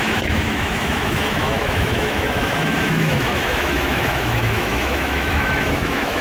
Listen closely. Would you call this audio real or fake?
fake